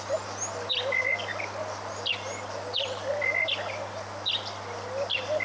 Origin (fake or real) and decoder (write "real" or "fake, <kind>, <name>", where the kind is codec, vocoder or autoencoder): real